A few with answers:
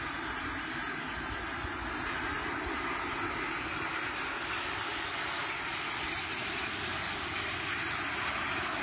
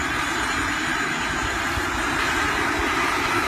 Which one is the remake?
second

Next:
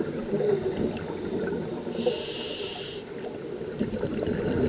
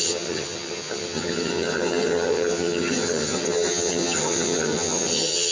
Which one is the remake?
second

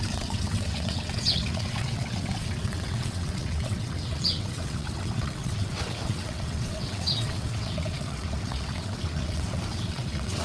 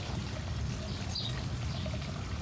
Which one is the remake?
first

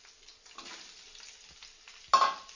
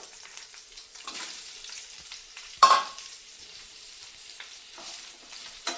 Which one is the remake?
second